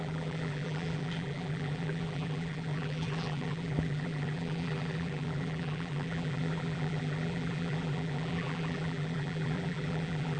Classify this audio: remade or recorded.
remade